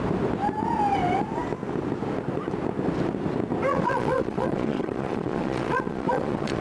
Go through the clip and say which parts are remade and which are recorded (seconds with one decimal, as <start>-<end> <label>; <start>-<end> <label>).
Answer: 0.0-3.7 recorded; 3.7-6.6 remade